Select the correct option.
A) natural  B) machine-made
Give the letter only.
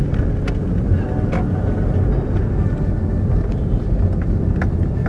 A